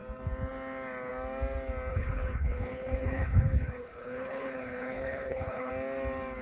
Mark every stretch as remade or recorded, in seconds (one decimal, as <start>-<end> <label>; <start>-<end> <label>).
0.0-1.9 recorded; 1.9-5.7 remade; 5.7-6.4 recorded